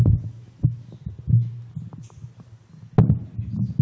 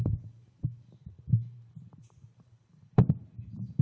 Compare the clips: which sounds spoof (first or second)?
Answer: second